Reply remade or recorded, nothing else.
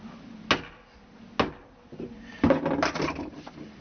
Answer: recorded